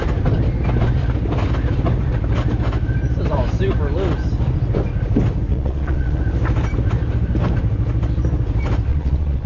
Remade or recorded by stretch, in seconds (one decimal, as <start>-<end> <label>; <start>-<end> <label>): 0.0-5.5 recorded; 5.5-6.2 remade; 6.2-8.9 recorded; 8.9-9.5 remade